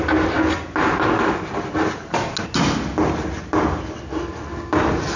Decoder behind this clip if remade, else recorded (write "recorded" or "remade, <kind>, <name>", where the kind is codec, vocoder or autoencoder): recorded